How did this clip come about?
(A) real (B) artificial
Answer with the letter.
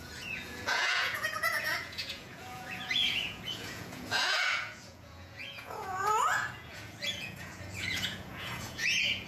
B